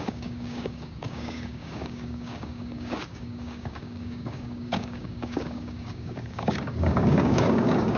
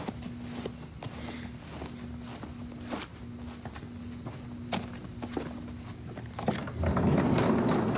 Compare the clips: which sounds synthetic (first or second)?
first